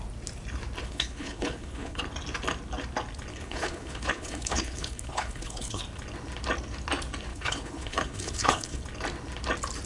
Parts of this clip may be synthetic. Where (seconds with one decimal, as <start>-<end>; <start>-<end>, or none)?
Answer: 0.8-2.0; 3.3-5.8; 7.3-8.8